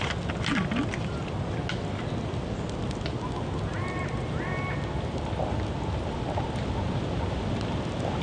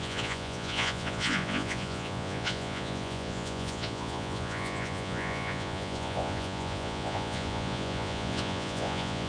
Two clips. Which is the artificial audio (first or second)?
second